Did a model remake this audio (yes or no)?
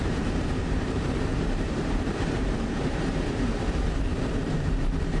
yes